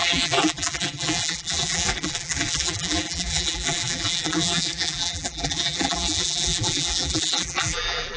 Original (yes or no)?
no